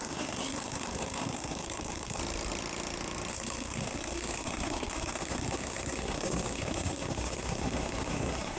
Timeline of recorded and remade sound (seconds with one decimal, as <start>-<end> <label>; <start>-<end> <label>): 0.0-2.2 remade; 2.2-3.3 recorded; 3.3-8.6 remade